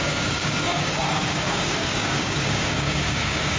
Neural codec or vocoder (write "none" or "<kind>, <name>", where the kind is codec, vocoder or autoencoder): codec, DAC